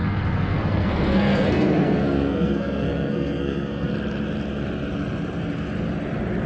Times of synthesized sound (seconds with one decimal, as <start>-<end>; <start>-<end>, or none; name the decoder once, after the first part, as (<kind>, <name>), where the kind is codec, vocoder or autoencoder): 0.0-3.9 (codec, SNAC)